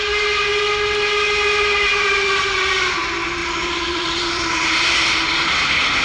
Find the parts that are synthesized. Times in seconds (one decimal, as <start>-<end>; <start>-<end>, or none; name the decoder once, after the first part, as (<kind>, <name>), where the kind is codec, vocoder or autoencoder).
1.9-3.0 (vocoder, BigVGAN v2); 3.4-5.3